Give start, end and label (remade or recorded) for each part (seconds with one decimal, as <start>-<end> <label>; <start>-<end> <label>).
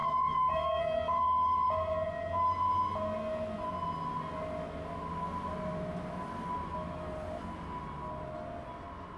0.0-0.8 remade; 0.8-9.2 recorded